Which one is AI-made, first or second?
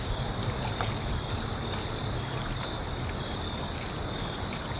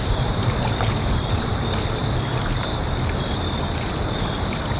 second